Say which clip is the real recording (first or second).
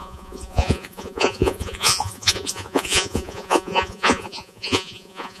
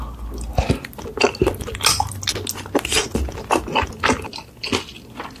second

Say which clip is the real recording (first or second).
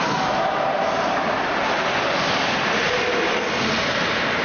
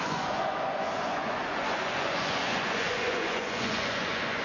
first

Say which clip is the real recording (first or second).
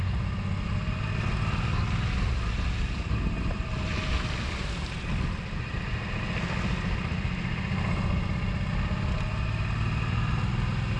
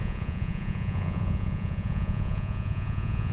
first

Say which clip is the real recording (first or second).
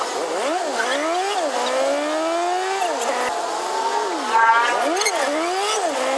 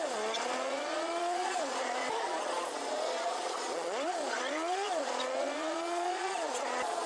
first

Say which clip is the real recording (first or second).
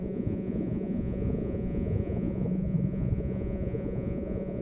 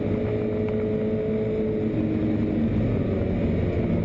second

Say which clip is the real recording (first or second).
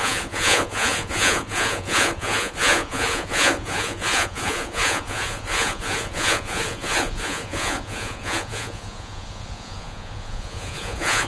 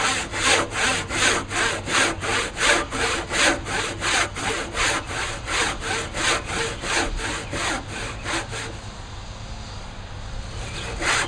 second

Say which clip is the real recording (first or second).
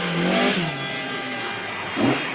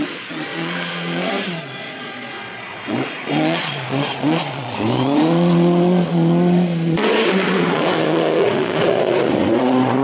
first